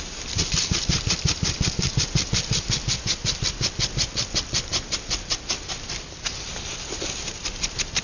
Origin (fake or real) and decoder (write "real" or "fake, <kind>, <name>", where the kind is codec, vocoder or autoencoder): fake, vocoder, BigVGAN v2